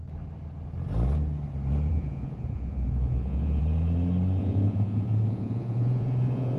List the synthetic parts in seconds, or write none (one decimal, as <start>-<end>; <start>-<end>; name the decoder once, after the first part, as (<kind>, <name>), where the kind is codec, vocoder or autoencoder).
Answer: 1.9-3.6 (vocoder, Vocos); 4.4-6.6